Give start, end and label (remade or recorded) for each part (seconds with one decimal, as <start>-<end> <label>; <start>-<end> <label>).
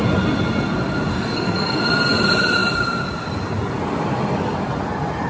0.0-1.1 recorded; 1.1-1.8 remade; 1.8-5.3 recorded